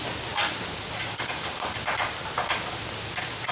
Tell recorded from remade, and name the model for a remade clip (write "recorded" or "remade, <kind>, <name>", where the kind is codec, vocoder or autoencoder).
recorded